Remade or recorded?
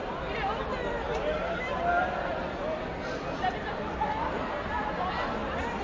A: recorded